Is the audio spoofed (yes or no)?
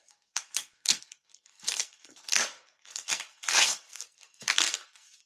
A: yes